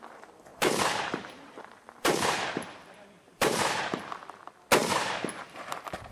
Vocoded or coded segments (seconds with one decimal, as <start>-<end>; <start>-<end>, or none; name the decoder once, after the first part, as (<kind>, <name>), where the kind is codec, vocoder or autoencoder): 0.5-4.2 (vocoder, BigVGAN v2); 4.8-6.1